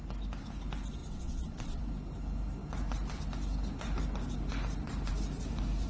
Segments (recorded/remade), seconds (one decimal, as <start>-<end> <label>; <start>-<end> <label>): 0.0-1.0 recorded; 1.0-1.8 remade; 1.8-5.9 recorded